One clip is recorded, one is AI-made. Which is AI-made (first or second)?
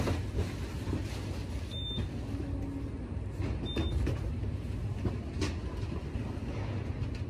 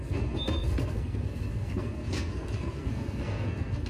second